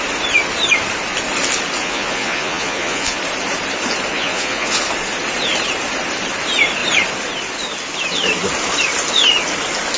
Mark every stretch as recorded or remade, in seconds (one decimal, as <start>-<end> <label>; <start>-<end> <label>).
0.0-1.8 recorded; 1.8-3.2 remade; 3.2-4.1 recorded; 4.1-4.8 remade; 4.8-10.0 recorded